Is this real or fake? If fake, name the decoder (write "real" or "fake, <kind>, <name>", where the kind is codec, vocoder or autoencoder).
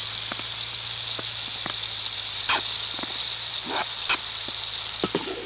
real